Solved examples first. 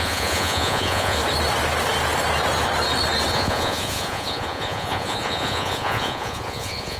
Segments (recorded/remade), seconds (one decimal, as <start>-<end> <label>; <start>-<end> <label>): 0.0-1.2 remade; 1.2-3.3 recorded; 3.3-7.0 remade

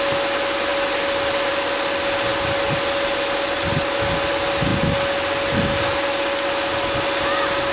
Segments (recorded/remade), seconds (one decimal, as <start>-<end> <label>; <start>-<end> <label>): 0.0-7.7 recorded

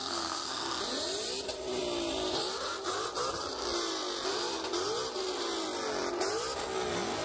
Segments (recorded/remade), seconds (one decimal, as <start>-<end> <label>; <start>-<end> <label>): 0.0-0.8 remade; 0.8-7.2 recorded

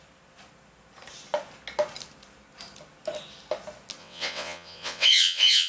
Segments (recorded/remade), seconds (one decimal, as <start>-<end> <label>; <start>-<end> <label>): 0.0-4.0 recorded; 4.0-5.7 remade

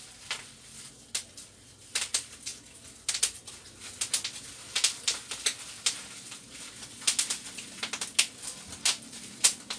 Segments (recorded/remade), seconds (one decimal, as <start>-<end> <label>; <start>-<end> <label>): 0.0-9.8 recorded

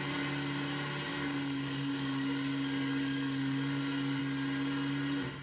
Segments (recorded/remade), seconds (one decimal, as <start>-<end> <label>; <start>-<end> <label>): 0.0-1.1 recorded; 1.1-4.2 remade; 4.2-5.4 recorded

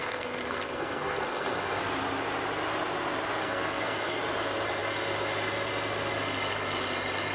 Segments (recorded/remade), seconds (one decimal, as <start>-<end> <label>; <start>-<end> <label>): 0.0-1.8 remade; 1.8-3.4 recorded; 3.4-4.2 remade; 4.2-7.3 recorded

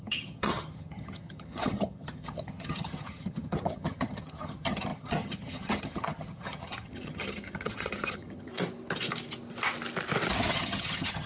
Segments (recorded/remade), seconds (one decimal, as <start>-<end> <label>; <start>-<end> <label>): 0.0-8.5 remade; 8.5-10.5 recorded; 10.5-11.3 remade